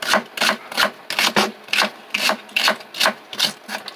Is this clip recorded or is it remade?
recorded